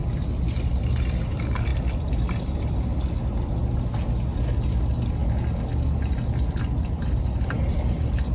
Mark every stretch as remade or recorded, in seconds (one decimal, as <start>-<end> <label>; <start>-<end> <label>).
0.0-8.3 recorded